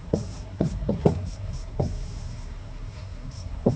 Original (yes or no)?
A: no